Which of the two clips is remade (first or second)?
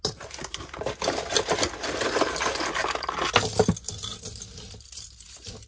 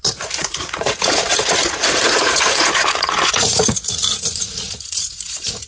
second